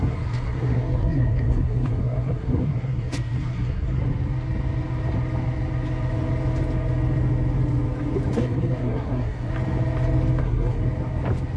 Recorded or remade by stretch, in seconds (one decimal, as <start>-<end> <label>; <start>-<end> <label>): 0.0-4.0 remade; 4.0-8.4 recorded; 8.4-9.5 remade; 9.5-10.4 recorded; 10.4-10.8 remade; 10.8-11.6 recorded